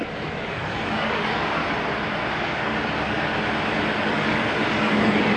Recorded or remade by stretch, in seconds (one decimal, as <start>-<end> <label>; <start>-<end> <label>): 0.0-1.6 remade; 1.6-2.3 recorded; 2.3-3.3 remade; 3.3-4.0 recorded; 4.0-5.4 remade